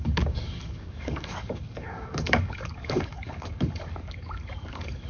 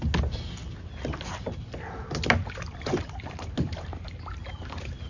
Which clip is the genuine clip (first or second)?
second